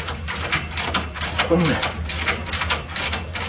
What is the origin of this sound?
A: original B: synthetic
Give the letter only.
A